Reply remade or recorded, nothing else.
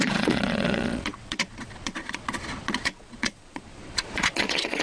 remade